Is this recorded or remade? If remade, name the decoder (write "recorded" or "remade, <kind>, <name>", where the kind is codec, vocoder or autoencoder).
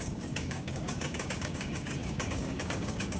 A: remade, codec, DAC